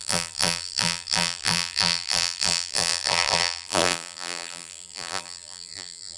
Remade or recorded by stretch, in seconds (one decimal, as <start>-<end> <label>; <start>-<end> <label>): 0.0-6.2 remade